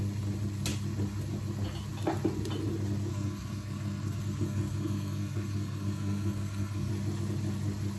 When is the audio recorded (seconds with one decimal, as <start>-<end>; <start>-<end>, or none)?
0.0-3.1; 6.9-8.0